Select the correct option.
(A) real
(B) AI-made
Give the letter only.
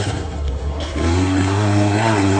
B